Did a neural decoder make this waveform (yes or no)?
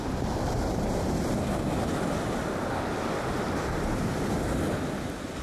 no